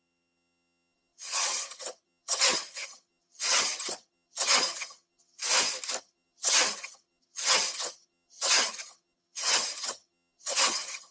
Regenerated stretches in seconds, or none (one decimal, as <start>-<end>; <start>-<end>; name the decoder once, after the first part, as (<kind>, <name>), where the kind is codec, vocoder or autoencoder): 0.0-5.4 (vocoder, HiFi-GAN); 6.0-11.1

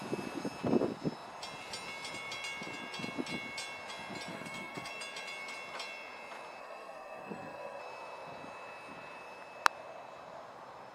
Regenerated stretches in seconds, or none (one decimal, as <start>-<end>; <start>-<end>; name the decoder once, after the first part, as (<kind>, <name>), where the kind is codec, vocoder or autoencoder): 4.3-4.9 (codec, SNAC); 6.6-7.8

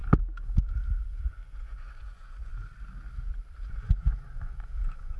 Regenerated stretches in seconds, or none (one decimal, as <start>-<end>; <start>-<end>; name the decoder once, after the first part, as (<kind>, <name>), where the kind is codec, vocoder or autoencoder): 1.3-2.5 (vocoder, Vocos); 3.7-5.2